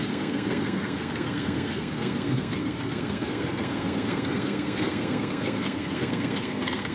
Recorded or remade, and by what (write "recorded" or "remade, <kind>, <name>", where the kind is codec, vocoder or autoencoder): remade, codec, SNAC